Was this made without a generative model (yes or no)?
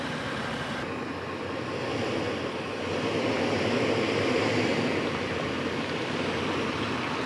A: yes